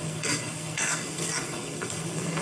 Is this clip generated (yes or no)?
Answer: yes